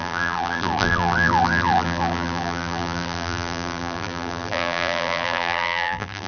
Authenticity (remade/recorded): remade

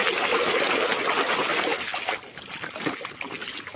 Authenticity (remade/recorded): recorded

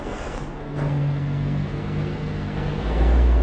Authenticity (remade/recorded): remade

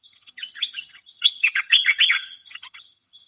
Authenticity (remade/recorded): remade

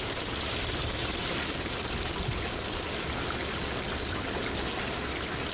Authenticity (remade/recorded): recorded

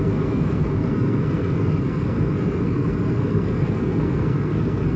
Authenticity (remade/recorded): remade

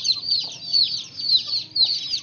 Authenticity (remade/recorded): recorded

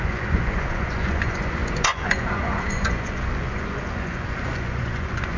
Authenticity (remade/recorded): remade